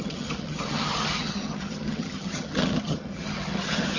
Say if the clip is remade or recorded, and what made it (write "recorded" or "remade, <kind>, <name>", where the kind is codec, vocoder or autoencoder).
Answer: remade, vocoder, HiFi-GAN